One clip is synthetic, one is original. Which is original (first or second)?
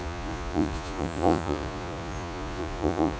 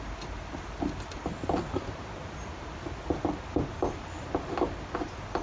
second